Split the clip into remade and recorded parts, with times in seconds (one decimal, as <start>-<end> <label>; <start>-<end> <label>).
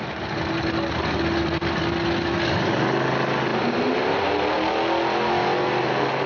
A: 0.0-6.3 recorded